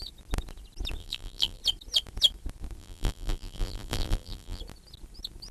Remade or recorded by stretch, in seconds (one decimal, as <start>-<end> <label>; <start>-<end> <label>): 0.0-1.0 recorded; 1.0-1.6 remade; 1.6-2.8 recorded; 2.8-4.6 remade; 4.6-5.5 recorded